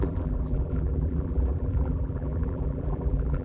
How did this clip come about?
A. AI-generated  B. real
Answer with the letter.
A